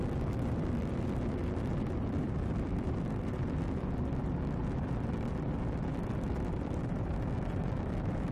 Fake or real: real